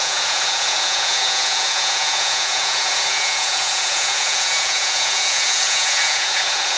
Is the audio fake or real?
fake